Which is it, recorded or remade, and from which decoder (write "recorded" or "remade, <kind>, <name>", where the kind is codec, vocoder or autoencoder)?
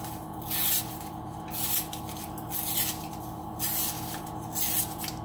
recorded